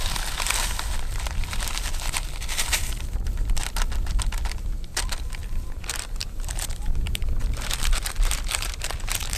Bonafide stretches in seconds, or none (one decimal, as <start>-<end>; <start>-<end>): 0.0-5.4